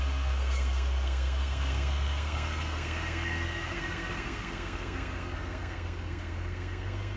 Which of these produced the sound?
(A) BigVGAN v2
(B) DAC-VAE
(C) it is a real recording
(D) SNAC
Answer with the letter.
D